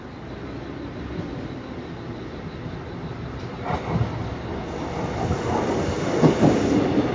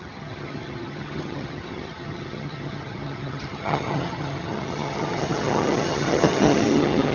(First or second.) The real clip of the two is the first